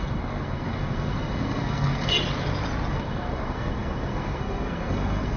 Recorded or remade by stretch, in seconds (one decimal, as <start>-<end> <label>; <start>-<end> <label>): 0.0-2.1 remade; 2.1-2.9 recorded; 2.9-5.4 remade